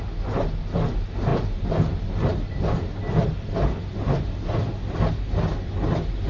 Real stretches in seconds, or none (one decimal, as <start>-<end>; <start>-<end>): 0.0-6.3